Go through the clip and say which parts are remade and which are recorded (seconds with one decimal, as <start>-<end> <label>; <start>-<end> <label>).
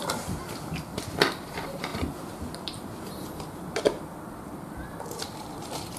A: 0.0-6.0 remade